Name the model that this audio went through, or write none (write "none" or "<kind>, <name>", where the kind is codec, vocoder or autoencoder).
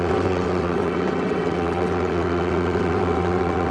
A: vocoder, WaveNeXt